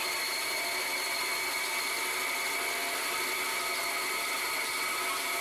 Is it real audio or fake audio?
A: real